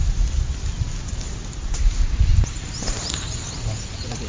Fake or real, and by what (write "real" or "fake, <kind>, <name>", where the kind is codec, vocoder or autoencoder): real